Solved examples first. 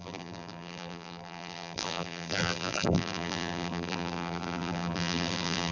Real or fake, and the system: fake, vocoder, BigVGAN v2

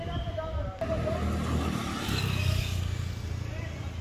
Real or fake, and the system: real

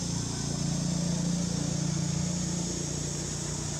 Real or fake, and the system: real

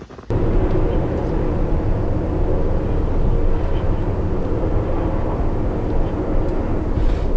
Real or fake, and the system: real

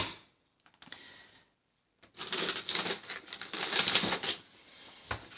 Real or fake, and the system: real